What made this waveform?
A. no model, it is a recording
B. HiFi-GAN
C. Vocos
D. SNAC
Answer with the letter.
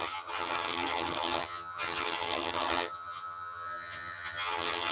B